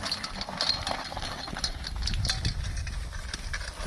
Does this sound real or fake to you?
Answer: real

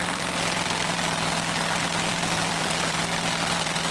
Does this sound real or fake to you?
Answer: fake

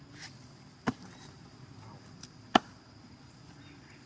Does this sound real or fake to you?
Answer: real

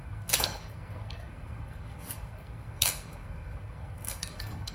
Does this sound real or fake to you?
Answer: fake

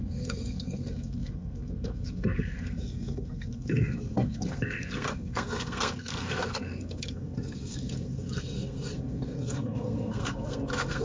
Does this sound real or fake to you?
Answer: fake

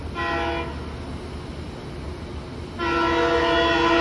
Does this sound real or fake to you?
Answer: real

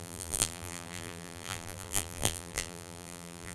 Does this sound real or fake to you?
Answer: fake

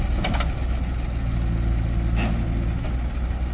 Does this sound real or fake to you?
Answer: real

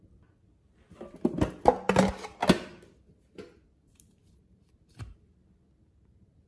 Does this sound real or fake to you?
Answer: real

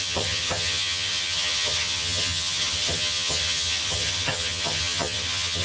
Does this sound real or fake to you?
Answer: fake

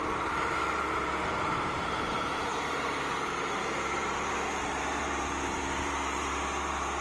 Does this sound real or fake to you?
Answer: fake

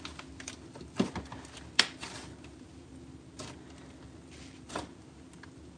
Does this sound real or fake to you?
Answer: real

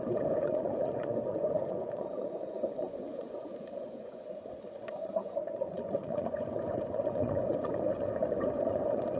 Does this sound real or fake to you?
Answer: fake